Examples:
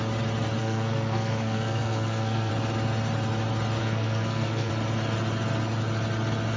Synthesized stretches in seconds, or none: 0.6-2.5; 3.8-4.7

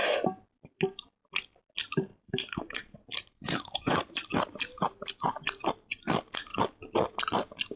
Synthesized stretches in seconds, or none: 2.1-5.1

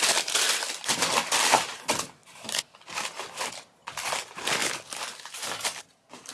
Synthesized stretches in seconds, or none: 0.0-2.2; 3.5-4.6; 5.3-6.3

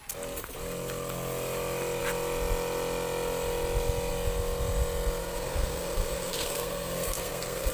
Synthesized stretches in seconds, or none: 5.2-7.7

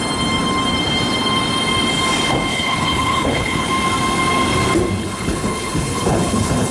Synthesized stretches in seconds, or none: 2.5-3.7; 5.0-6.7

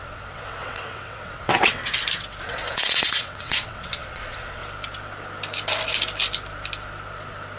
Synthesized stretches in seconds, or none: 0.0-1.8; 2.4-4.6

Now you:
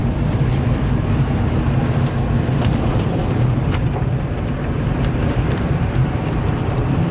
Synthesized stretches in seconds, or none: 2.5-7.1